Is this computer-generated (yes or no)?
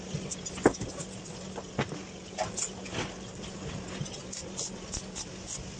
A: no